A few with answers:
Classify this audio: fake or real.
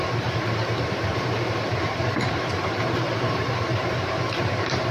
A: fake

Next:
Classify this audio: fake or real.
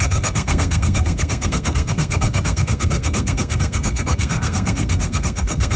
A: fake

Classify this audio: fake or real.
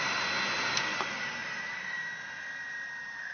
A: real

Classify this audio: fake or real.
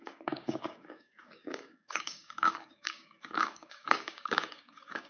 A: fake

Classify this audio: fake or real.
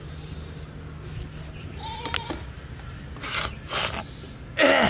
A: real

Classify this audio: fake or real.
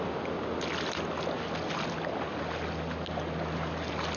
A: real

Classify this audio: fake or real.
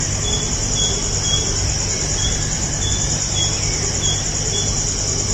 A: real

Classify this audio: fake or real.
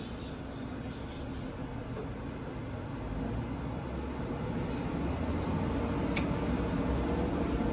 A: real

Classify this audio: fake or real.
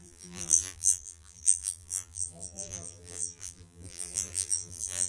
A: fake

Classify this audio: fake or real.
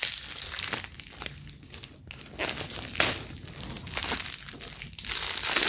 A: real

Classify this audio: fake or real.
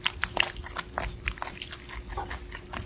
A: real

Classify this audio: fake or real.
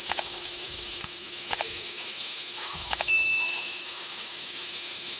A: fake